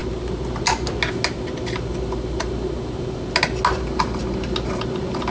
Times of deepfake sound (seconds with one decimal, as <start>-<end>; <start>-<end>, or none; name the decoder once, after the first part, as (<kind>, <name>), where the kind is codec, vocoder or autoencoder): none